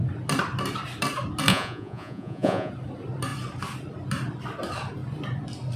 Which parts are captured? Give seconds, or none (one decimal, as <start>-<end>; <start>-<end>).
0.0-1.5; 2.7-5.8